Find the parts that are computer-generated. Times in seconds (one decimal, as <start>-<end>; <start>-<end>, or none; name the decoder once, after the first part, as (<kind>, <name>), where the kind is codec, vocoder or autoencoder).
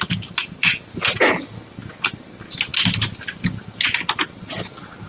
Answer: none